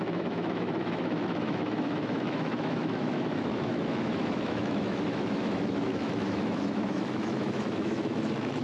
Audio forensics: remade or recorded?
remade